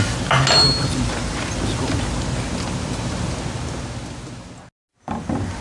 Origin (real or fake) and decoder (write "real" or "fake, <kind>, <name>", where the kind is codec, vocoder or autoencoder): real